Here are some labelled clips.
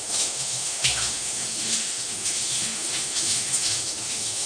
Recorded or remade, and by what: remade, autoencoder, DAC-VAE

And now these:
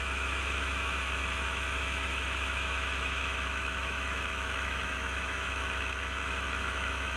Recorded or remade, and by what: remade, autoencoder, DAC-VAE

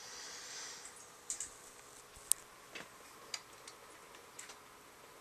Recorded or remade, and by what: recorded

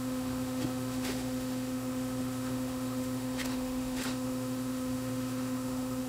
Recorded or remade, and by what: remade, autoencoder, DAC-VAE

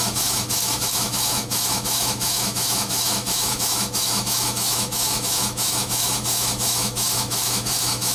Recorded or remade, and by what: remade, autoencoder, DAC-VAE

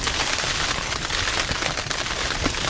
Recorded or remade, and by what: recorded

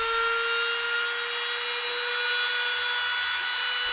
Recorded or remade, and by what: recorded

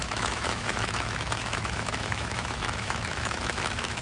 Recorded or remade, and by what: remade, autoencoder, DAC-VAE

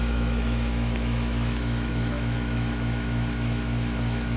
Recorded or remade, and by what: remade, autoencoder, DAC-VAE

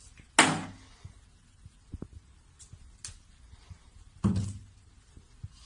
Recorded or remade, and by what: recorded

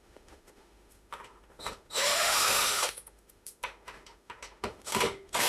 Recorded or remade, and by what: remade, autoencoder, DAC-VAE